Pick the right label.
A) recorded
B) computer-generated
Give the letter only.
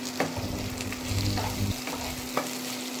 A